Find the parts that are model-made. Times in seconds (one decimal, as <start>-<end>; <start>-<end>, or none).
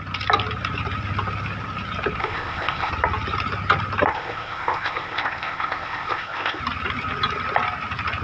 2.2-2.9; 4.1-6.6